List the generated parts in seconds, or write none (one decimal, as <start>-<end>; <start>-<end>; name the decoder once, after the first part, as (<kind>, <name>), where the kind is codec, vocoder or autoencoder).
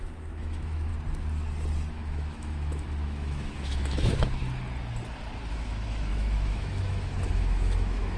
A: 0.0-0.9 (autoencoder, DAC-VAE); 1.9-4.4; 5.5-8.2